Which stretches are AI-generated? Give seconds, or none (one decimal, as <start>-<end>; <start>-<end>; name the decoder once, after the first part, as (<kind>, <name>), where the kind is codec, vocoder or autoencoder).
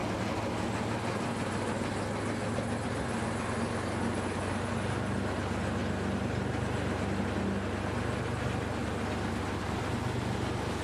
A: none